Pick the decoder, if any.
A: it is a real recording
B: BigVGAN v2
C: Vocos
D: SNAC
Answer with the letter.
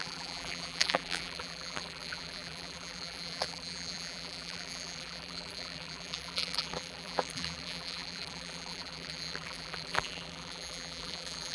B